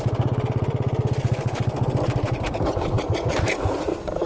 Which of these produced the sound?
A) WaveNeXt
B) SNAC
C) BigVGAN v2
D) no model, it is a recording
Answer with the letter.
C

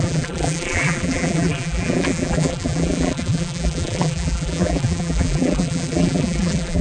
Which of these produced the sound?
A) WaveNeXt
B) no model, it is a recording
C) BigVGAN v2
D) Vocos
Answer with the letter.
C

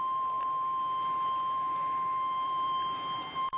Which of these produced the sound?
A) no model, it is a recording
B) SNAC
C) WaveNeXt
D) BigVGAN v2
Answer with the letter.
D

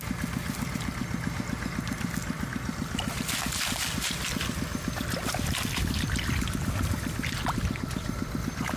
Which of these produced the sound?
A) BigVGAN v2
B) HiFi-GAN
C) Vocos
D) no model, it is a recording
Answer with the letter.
D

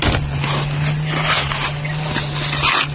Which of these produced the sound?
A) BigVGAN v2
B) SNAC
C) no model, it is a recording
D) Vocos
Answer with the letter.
C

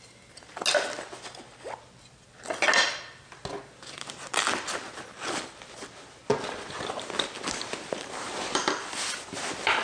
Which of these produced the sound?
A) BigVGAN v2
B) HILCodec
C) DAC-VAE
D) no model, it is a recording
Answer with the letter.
D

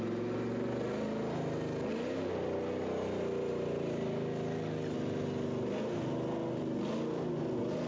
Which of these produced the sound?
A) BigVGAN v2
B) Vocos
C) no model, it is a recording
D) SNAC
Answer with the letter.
C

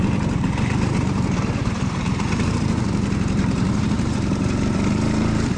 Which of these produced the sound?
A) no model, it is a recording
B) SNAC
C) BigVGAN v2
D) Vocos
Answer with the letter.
C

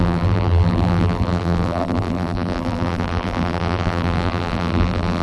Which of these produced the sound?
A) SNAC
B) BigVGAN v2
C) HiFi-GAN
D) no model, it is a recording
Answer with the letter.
B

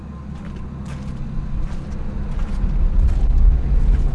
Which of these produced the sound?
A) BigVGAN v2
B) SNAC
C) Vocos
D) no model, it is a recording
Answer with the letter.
D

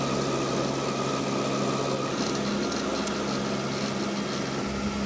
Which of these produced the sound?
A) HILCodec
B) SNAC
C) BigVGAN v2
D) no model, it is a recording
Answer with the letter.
D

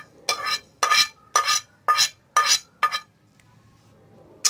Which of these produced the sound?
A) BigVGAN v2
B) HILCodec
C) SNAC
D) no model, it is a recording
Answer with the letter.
D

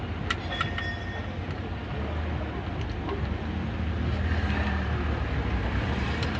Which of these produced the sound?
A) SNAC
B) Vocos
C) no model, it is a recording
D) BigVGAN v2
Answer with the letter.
C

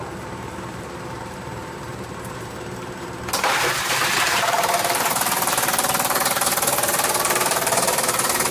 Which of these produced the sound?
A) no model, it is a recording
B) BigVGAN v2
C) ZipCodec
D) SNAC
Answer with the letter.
B